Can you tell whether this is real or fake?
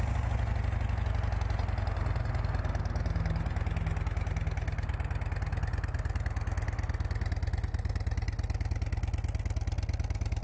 real